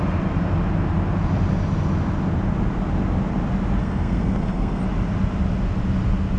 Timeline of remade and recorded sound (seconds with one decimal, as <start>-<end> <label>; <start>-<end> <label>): 0.0-3.8 recorded; 3.8-4.8 remade; 4.8-6.4 recorded